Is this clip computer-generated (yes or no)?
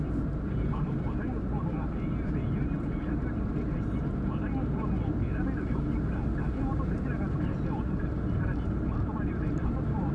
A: no